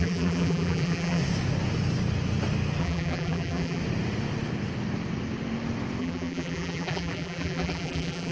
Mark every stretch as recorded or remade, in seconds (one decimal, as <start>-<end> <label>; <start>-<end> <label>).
0.0-1.2 remade; 1.2-2.8 recorded; 2.8-3.8 remade; 3.8-6.0 recorded; 6.0-8.3 remade